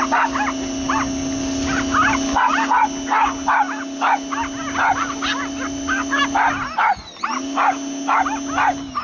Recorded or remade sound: recorded